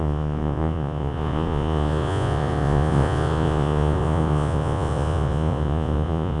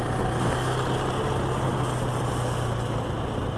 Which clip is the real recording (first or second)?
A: second